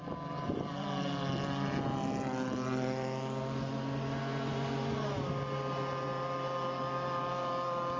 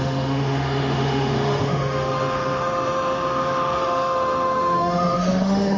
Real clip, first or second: first